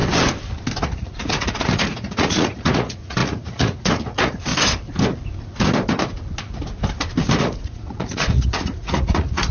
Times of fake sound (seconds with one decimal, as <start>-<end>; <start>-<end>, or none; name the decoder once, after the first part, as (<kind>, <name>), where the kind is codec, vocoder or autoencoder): 0.8-4.5 (vocoder, Vocos); 7.4-9.5